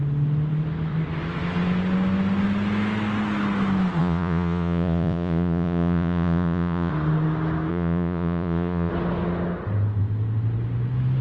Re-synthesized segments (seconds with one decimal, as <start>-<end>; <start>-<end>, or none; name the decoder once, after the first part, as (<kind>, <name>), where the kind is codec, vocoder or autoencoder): 4.0-6.9 (vocoder, Vocos); 7.7-8.9